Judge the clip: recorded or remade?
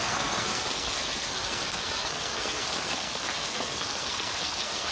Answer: remade